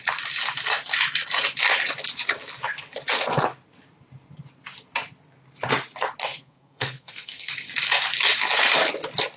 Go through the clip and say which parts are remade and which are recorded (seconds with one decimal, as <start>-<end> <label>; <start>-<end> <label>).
0.0-6.2 recorded; 6.2-7.5 remade; 7.5-9.4 recorded